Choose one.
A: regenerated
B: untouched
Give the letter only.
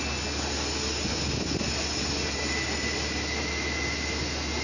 B